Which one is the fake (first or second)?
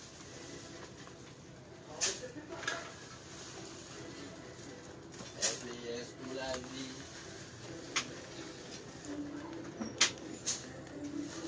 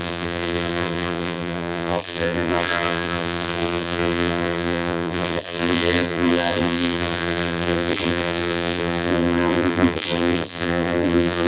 second